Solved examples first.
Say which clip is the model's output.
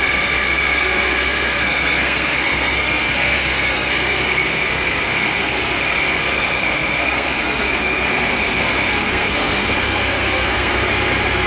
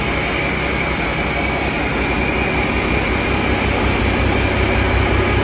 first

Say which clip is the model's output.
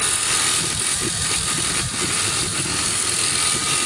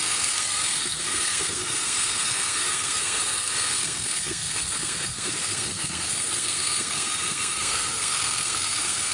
second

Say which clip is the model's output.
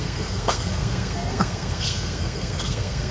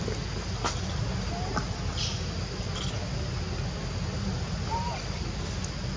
first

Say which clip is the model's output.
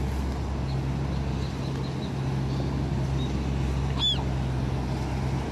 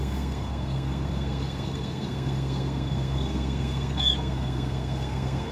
second